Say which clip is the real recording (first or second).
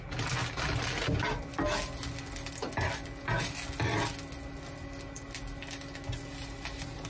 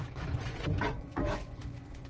first